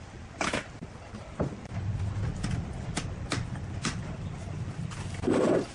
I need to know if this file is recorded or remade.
recorded